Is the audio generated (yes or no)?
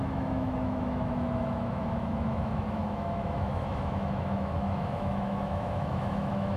yes